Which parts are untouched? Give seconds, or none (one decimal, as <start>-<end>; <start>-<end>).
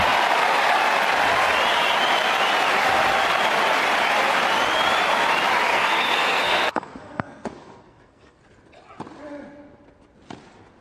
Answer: 0.0-5.7; 8.4-10.8